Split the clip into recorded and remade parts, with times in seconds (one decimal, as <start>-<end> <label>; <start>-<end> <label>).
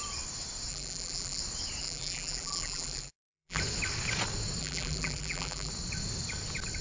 0.0-0.7 recorded; 0.7-1.4 remade; 1.4-1.8 recorded; 1.8-3.6 remade; 3.6-4.6 recorded; 4.6-5.7 remade; 5.7-6.8 recorded